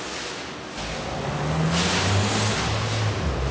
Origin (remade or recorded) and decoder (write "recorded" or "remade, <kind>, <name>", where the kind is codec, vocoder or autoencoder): recorded